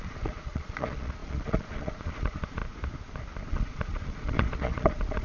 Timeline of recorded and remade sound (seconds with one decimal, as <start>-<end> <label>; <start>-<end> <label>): 0.0-2.6 remade; 2.6-3.5 recorded; 3.5-5.2 remade